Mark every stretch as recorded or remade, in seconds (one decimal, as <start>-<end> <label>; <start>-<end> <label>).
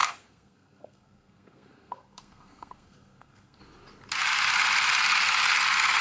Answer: 0.0-3.6 remade; 3.6-6.0 recorded